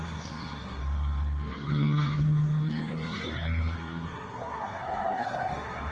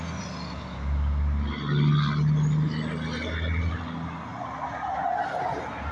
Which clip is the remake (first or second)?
first